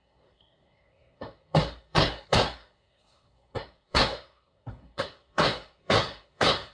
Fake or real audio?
fake